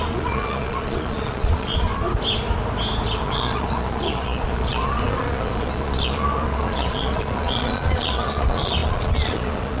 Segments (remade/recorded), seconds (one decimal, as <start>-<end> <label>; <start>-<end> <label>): 0.0-1.9 remade; 1.9-3.2 recorded; 3.2-9.8 remade